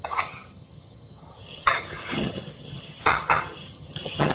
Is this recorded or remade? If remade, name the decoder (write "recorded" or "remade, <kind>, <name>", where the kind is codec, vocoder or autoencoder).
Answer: remade, vocoder, HiFi-GAN